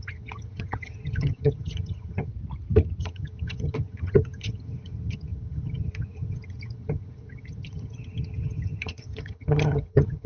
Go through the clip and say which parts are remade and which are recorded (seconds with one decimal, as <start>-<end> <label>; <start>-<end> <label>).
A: 0.0-2.3 remade; 2.3-3.0 recorded; 3.0-10.3 remade